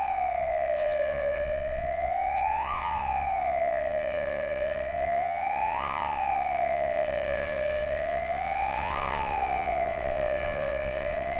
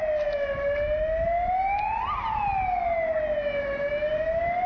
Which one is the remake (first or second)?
first